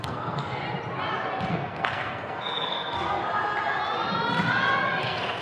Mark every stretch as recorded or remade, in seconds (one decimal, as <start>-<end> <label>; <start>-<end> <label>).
0.0-0.6 remade; 0.6-1.5 recorded; 1.5-3.2 remade; 3.2-5.0 recorded; 5.0-5.4 remade